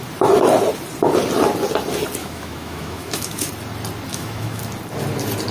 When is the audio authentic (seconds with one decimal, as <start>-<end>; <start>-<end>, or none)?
0.0-2.2; 3.5-4.1; 4.6-5.5